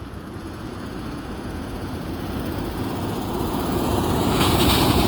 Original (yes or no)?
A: no